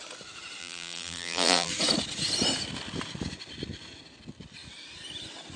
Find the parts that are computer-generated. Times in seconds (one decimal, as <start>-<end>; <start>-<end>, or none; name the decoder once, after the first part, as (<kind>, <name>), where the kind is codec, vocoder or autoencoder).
0.6-1.7 (vocoder, BigVGAN v2)